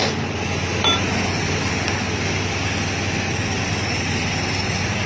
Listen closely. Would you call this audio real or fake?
real